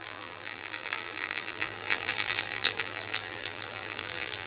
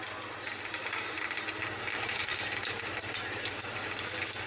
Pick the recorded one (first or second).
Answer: second